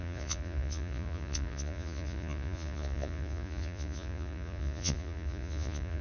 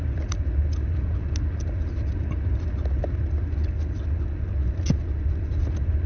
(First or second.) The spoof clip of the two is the first